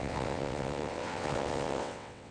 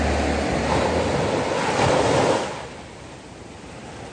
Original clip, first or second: second